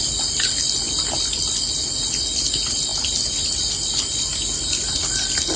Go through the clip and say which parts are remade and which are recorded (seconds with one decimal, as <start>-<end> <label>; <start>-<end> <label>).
0.0-5.6 recorded